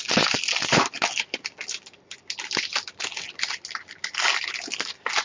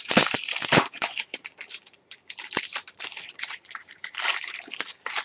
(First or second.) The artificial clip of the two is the second